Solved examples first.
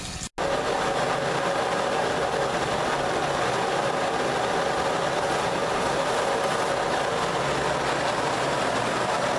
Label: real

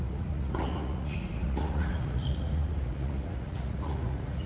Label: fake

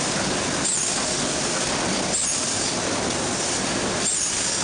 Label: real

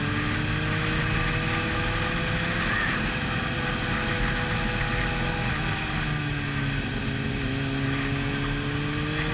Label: real